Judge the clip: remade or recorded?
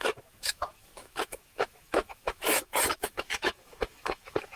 remade